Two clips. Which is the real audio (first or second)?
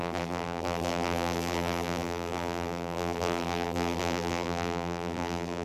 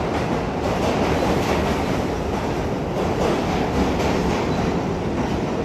second